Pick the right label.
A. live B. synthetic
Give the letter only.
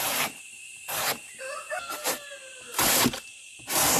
B